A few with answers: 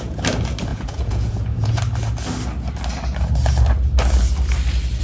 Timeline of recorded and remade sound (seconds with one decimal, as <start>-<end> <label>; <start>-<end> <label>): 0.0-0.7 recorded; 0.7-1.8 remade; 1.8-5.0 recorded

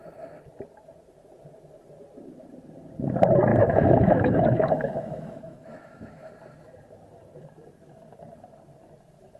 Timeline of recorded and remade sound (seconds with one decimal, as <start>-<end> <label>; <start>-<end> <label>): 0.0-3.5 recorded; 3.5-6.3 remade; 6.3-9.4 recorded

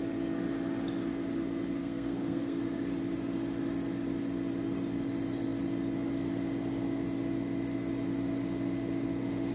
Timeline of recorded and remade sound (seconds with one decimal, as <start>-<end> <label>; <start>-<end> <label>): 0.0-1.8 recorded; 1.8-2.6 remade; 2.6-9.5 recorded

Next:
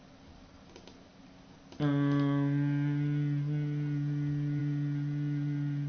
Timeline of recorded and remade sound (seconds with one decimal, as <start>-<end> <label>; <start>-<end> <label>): 0.0-5.9 recorded

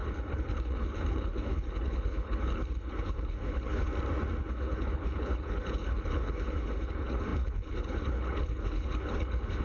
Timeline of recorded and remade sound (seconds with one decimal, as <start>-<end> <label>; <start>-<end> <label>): 0.0-3.9 remade; 3.9-4.4 recorded; 4.4-9.6 remade

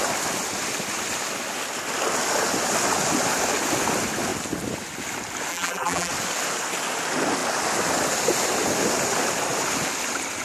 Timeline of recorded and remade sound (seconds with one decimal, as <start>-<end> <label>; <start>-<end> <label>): 0.0-5.5 recorded; 5.5-6.1 remade; 6.1-10.4 recorded

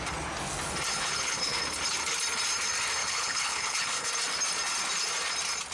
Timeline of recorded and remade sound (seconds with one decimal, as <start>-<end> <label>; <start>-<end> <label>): 0.0-0.9 recorded; 0.9-1.6 remade; 1.6-3.0 recorded; 3.0-4.1 remade; 4.1-5.7 recorded